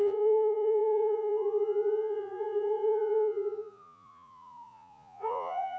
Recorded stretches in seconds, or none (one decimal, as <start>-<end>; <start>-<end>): none